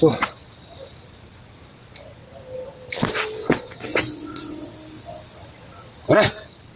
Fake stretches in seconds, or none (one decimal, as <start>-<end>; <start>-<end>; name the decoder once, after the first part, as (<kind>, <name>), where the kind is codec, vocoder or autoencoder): 3.4-4.7 (vocoder, WaveNeXt)